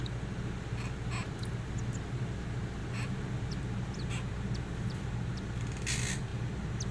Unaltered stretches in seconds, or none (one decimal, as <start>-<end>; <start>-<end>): 0.0-6.9